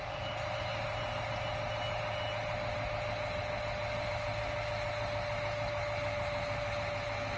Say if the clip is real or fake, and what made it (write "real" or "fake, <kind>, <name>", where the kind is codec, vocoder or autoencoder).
real